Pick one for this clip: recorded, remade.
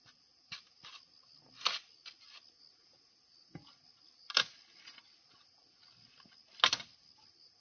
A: recorded